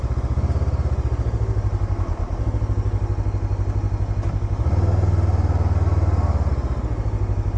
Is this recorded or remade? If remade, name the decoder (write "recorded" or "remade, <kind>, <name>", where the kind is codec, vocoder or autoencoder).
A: recorded